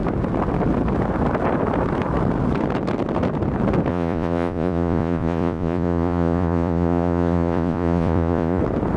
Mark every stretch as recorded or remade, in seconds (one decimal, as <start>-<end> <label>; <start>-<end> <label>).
0.0-3.9 recorded; 3.9-8.6 remade; 8.6-9.0 recorded